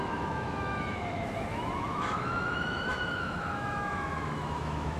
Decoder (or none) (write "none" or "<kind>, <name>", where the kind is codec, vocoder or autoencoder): autoencoder, DAC-VAE